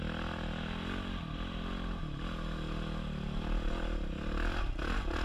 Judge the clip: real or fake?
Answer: real